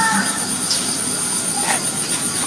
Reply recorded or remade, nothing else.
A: recorded